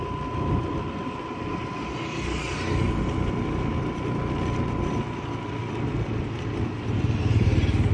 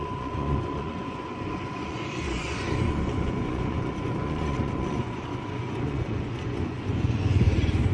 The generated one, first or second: second